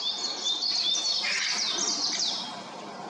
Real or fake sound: real